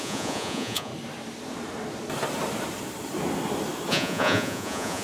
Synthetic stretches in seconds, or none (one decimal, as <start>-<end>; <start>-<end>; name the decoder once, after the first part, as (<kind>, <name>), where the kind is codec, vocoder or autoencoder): 0.0-0.9 (vocoder, Vocos); 3.9-5.0